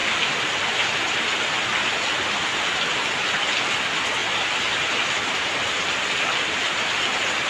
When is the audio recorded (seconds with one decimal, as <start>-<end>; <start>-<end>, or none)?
1.0-7.5